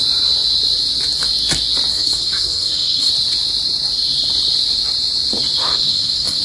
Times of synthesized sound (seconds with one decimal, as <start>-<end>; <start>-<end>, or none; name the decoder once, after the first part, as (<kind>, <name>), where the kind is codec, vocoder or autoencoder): 1.9-3.1 (codec, SNAC); 5.7-6.4